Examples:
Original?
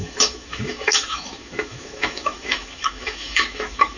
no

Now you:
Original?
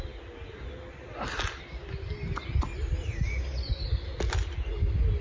yes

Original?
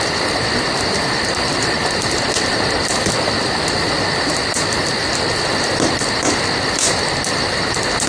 yes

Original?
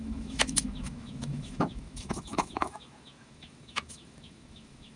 no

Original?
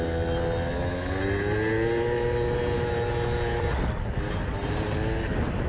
yes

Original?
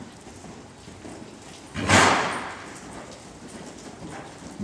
yes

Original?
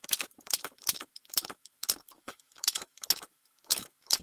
no